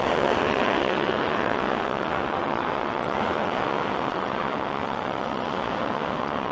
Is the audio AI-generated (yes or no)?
yes